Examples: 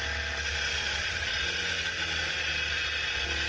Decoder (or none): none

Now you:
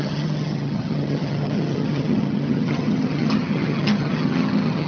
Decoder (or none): vocoder, HiFi-GAN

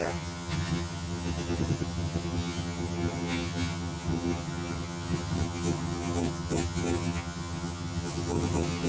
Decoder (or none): vocoder, HiFi-GAN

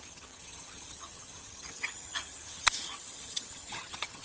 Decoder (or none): vocoder, HiFi-GAN